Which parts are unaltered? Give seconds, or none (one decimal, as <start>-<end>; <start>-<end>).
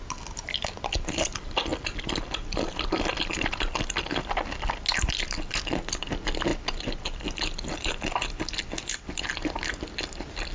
0.0-10.5